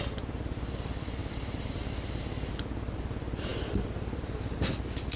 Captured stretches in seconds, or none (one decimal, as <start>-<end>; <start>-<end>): 0.0-5.2